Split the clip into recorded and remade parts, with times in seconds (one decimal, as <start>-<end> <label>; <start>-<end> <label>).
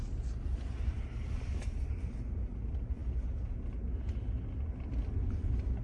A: 0.0-5.8 recorded